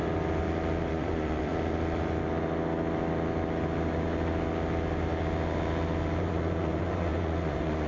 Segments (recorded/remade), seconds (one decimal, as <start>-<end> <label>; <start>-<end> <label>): 0.0-0.9 recorded; 0.9-1.5 remade; 1.5-6.2 recorded; 6.2-7.9 remade

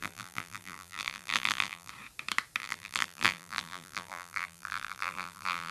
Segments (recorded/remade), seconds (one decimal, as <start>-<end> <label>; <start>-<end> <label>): 0.0-1.9 remade; 1.9-2.6 recorded; 2.6-5.7 remade

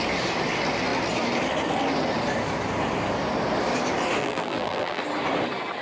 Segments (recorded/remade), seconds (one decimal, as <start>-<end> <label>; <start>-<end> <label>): 0.0-4.2 recorded; 4.2-5.0 remade; 5.0-5.8 recorded

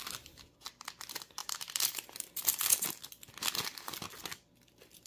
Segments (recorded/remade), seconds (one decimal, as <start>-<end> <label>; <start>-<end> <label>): 0.0-5.1 recorded

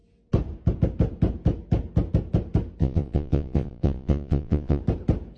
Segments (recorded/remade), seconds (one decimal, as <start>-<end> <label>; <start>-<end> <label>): 0.0-2.8 recorded; 2.8-4.8 remade; 4.8-5.4 recorded